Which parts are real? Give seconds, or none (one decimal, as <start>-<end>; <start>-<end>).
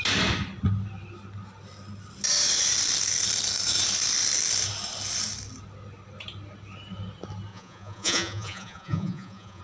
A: 0.0-7.5